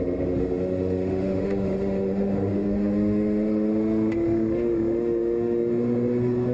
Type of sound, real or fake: fake